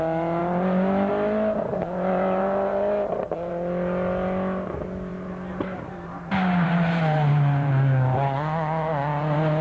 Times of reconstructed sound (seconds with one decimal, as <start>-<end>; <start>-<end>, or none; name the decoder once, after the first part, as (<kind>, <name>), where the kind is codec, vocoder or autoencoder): 1.7-3.5 (vocoder, BigVGAN v2); 5.1-7.7